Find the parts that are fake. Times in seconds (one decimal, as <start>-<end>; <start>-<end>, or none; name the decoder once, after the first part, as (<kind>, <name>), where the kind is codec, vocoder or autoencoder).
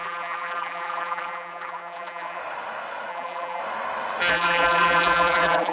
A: 0.0-2.4 (vocoder, BigVGAN v2); 3.1-3.6; 4.3-5.7